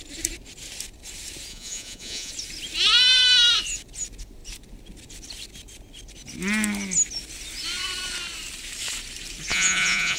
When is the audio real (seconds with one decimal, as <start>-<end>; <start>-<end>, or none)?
0.0-1.5; 2.3-9.5